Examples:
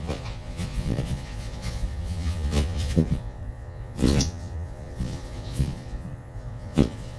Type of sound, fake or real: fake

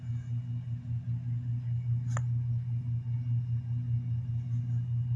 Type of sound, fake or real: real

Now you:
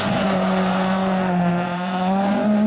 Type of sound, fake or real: fake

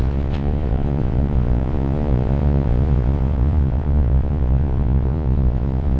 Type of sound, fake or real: fake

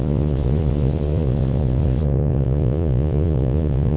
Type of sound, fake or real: fake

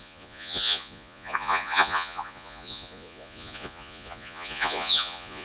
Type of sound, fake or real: fake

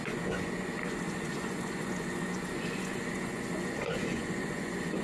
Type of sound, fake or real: fake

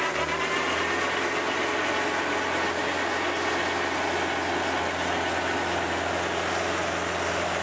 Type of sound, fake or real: real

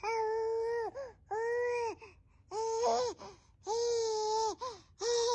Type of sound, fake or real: real